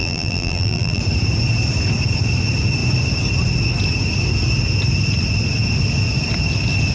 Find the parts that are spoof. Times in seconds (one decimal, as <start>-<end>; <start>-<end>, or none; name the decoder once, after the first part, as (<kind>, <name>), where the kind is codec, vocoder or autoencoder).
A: 0.0-1.0 (vocoder, BigVGAN v2)